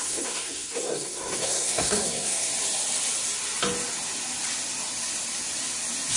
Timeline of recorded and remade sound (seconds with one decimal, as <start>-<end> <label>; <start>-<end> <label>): 0.0-2.5 remade; 2.5-6.2 recorded